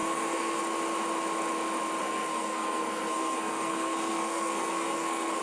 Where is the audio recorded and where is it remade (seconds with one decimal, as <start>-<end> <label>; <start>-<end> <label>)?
0.0-0.6 remade; 0.6-2.0 recorded; 2.0-5.4 remade